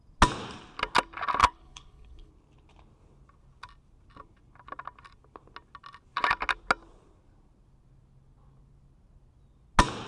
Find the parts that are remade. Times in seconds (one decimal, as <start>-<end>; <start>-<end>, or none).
1.4-2.3

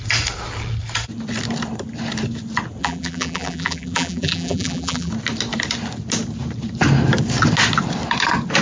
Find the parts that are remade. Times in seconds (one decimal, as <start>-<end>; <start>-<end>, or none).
2.8-5.1

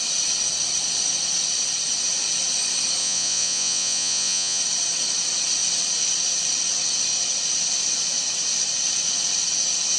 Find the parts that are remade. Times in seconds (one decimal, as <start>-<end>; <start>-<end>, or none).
3.0-4.6